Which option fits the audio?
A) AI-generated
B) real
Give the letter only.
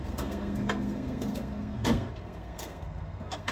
A